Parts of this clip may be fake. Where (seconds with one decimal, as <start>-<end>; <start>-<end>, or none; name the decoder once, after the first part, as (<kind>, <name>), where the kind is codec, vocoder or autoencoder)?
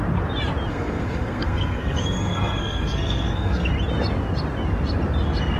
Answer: 0.7-3.7 (codec, SNAC)